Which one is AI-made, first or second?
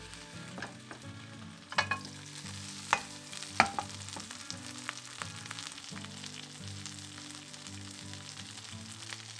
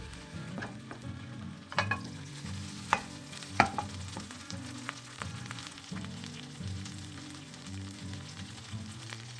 second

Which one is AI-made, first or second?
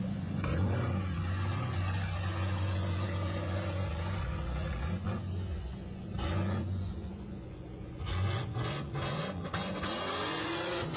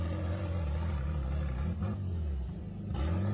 first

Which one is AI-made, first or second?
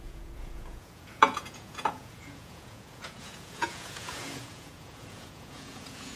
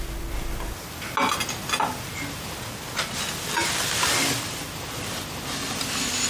first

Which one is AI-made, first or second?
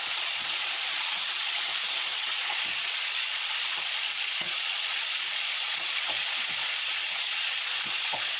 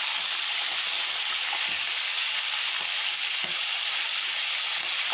first